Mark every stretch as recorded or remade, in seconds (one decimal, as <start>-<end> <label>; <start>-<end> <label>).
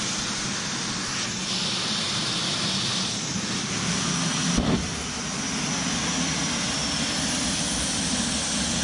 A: 0.0-8.8 recorded